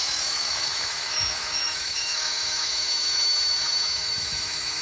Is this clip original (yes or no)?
no